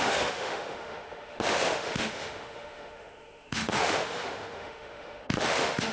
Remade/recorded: remade